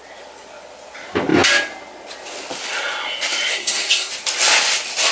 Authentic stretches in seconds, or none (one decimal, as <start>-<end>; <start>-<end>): 0.0-3.5; 4.1-5.1